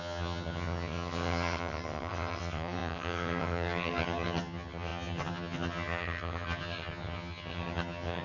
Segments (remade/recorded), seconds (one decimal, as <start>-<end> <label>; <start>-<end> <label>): 0.0-8.2 remade